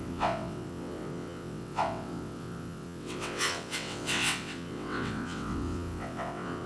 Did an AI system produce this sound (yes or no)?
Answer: yes